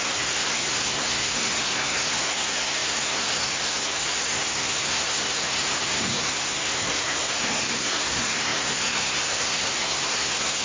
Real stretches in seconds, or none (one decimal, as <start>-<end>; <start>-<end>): none